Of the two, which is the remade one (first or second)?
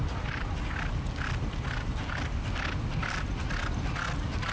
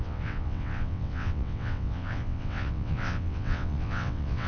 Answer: second